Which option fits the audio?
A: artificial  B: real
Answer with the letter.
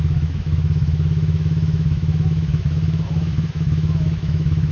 A